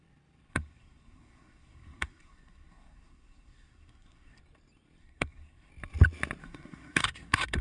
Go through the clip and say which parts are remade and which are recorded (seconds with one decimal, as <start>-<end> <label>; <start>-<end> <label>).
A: 0.0-0.5 recorded; 0.5-4.4 remade; 4.4-5.0 recorded; 5.0-5.7 remade; 5.7-6.4 recorded; 6.4-7.6 remade